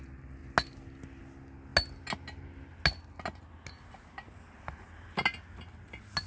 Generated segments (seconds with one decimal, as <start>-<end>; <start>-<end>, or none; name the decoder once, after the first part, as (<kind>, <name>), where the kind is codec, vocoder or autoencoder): none